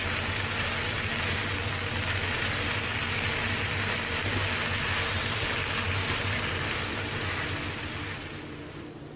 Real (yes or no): yes